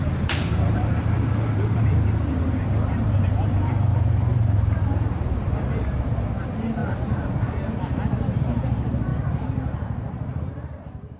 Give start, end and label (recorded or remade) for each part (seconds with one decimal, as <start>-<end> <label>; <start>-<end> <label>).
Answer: 0.0-9.1 remade; 9.1-10.5 recorded; 10.5-11.2 remade